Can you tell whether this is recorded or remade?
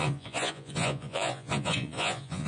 remade